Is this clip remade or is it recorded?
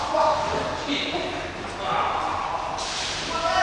remade